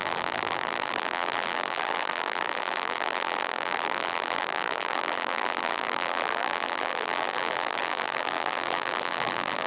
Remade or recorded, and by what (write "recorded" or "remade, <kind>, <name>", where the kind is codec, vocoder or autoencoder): remade, vocoder, BigVGAN v2